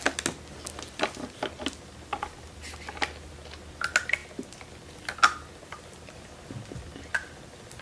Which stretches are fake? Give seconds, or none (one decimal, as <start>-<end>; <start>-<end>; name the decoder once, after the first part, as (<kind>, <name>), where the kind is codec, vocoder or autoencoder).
none